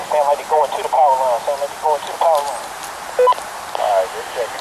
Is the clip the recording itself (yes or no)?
yes